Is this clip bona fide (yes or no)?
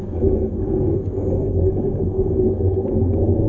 no